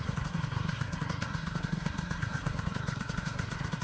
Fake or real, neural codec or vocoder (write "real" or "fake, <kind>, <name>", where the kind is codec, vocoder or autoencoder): fake, codec, SNAC